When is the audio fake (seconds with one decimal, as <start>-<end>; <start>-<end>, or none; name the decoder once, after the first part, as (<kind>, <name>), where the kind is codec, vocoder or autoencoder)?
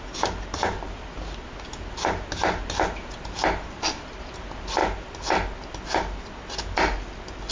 none